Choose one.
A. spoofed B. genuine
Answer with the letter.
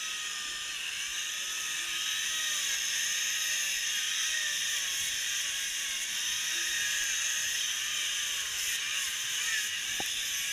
B